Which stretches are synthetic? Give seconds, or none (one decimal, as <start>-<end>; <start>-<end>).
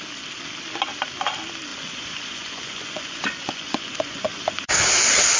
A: 1.7-4.7